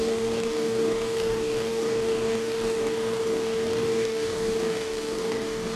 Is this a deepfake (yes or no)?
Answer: yes